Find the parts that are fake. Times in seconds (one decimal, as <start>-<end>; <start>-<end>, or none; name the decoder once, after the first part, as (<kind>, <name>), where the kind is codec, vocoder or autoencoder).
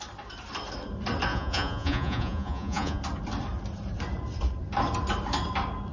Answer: 1.3-3.0 (vocoder, Vocos)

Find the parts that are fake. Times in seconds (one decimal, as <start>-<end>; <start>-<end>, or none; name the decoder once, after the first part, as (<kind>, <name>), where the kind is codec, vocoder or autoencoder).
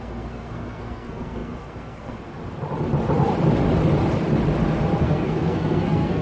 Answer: 0.0-2.4 (codec, SNAC); 5.0-6.2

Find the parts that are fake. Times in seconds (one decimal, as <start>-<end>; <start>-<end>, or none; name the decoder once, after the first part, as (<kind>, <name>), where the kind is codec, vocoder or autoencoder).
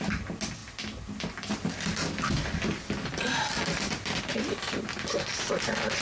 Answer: none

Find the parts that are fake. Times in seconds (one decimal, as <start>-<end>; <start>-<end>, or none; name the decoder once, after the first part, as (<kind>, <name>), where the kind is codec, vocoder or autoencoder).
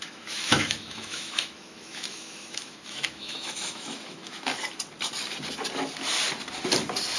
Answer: 0.0-4.5 (autoencoder, DAC-VAE)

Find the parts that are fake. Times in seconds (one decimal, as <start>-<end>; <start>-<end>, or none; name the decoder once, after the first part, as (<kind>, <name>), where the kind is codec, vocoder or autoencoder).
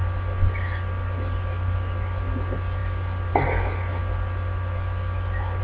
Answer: none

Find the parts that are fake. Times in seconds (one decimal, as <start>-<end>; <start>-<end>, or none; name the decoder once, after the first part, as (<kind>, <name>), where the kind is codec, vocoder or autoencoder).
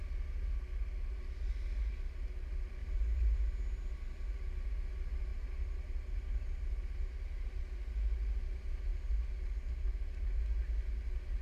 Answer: 2.8-3.4 (vocoder, BigVGAN v2); 5.3-7.6; 8.9-10.4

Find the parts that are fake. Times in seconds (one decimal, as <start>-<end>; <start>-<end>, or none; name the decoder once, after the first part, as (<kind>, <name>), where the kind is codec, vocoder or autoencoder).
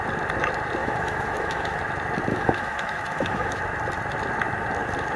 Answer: 0.8-1.8 (autoencoder, DAC-VAE); 2.3-3.6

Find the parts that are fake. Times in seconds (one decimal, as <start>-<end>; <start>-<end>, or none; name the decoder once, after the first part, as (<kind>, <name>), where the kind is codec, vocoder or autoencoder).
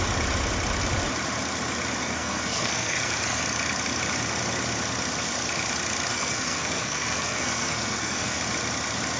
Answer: 2.0-3.4 (codec, SNAC); 6.1-8.4